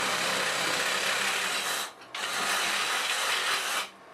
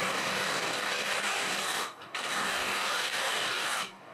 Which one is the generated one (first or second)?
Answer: second